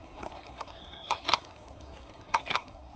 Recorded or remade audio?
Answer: remade